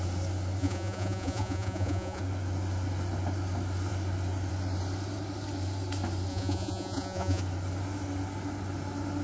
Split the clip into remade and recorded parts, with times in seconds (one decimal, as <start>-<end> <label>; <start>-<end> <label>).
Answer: 0.0-0.6 recorded; 0.6-2.2 remade; 2.2-6.3 recorded; 6.3-7.4 remade; 7.4-9.2 recorded